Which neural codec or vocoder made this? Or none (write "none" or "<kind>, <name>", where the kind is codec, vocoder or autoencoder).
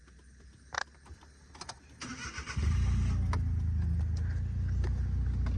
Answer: none